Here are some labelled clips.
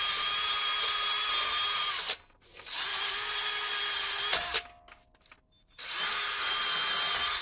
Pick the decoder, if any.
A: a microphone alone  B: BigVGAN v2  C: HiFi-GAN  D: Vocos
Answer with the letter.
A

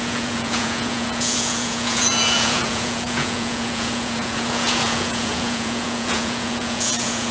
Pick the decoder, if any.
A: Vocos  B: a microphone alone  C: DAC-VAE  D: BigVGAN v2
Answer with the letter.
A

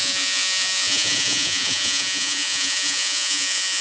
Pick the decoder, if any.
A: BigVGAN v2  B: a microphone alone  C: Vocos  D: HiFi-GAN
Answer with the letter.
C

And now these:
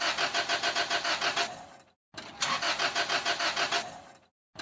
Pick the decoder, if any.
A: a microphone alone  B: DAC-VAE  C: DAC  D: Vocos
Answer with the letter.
A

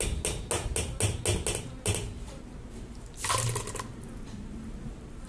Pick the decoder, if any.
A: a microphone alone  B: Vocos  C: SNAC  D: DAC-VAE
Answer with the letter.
A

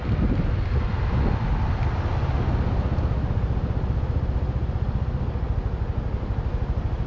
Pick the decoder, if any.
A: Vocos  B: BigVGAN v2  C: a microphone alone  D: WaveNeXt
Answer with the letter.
C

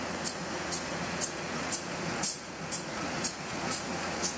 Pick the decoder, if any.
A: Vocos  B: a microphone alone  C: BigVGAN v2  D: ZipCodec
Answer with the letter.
A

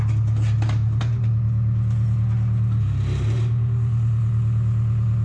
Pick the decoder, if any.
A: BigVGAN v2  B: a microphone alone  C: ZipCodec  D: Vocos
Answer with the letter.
B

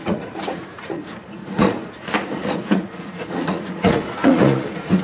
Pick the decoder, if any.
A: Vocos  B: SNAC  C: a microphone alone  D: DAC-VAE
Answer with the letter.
A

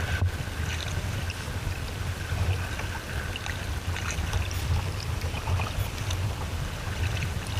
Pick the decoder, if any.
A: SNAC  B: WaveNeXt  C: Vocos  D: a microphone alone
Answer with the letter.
D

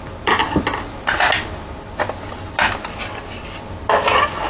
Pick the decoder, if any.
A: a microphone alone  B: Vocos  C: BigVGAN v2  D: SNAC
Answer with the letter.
A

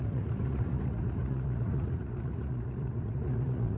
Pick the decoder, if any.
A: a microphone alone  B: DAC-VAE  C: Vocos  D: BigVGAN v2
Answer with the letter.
C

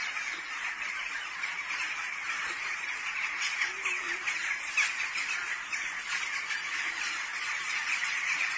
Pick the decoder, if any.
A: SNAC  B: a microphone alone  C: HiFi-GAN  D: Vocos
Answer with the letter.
B